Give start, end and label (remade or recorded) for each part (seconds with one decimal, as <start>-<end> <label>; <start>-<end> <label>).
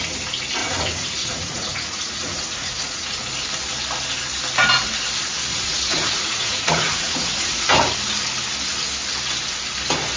0.0-0.6 recorded; 0.6-3.3 remade; 3.3-5.5 recorded; 5.5-7.7 remade; 7.7-10.2 recorded